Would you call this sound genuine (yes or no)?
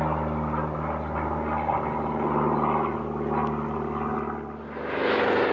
yes